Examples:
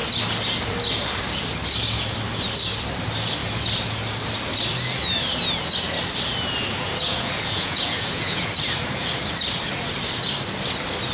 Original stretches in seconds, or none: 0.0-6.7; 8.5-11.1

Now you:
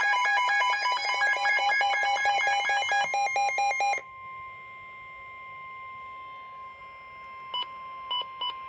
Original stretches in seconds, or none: 2.4-8.7

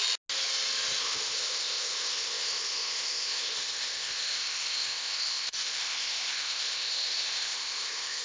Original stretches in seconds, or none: 0.0-1.0

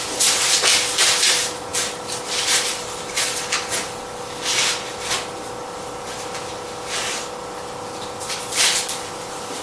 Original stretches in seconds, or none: 0.0-9.6

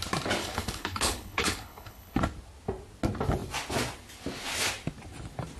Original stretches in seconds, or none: 0.0-0.4; 2.2-5.6

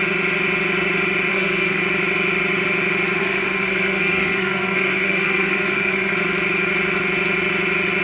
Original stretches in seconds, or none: 0.0-1.3; 1.8-3.2; 6.1-8.0

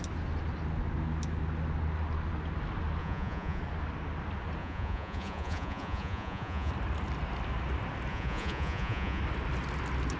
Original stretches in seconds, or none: 0.0-3.0; 3.6-4.6; 6.7-8.1; 9.2-10.2

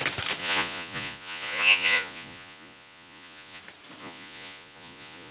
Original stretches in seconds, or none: 0.0-0.4; 3.6-4.0